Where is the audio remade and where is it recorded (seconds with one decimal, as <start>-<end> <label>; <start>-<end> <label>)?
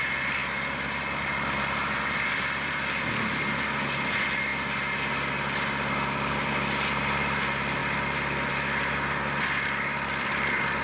0.0-10.8 recorded